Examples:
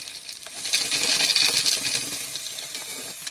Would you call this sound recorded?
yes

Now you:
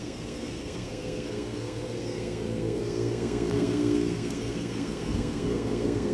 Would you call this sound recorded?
no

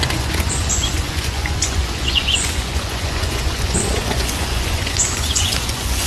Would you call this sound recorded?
no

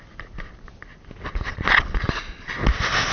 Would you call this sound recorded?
yes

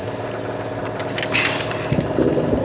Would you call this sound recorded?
yes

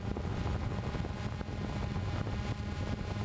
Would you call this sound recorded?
yes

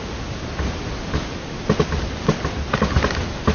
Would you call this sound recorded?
yes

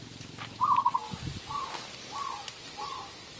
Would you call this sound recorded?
yes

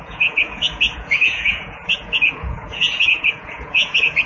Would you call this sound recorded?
no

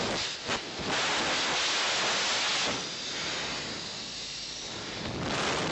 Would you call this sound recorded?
yes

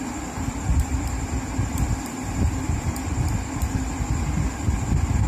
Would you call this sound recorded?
yes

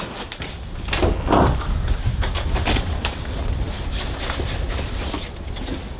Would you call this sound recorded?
yes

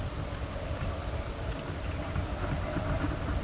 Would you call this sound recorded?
yes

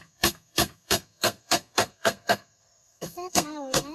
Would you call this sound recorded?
no